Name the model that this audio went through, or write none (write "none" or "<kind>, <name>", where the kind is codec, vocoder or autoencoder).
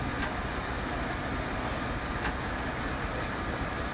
none